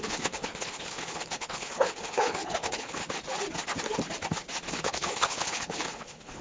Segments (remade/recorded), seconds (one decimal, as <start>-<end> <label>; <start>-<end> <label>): 0.0-3.0 remade; 3.0-4.7 recorded; 4.7-6.4 remade